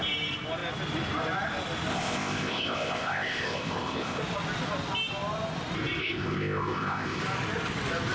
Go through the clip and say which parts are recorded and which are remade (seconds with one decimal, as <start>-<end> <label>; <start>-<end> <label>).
0.0-1.9 recorded; 1.9-4.2 remade; 4.2-6.0 recorded; 6.0-7.2 remade; 7.2-8.1 recorded